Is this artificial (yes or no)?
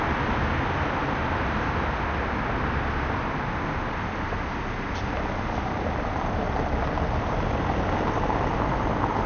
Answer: no